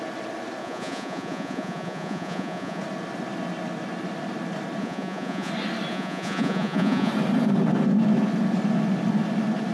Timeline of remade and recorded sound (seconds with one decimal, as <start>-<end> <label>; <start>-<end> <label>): 0.0-0.6 recorded; 0.6-2.8 remade; 2.8-4.8 recorded; 4.8-5.5 remade; 5.5-5.9 recorded; 5.9-7.1 remade; 7.1-9.7 recorded